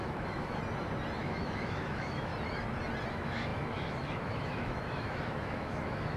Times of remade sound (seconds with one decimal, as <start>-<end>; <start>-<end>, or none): 0.0-0.6; 1.2-2.3; 3.1-6.2